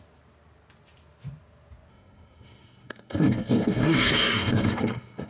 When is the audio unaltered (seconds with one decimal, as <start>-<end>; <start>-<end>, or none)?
0.0-1.9